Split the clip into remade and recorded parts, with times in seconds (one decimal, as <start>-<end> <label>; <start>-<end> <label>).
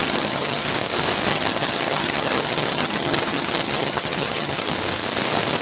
0.0-0.7 remade; 0.7-1.3 recorded; 1.3-4.7 remade; 4.7-5.6 recorded